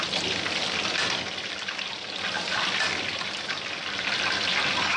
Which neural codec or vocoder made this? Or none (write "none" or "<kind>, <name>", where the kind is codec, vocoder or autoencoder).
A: none